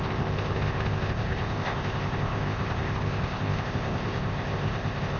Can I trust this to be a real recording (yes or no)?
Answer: no